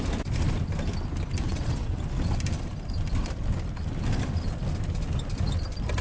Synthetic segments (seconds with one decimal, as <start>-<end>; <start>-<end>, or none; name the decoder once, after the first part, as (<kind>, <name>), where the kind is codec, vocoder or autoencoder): 1.4-2.0 (vocoder, WaveNeXt)